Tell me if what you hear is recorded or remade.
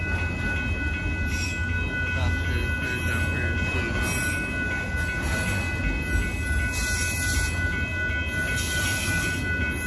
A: recorded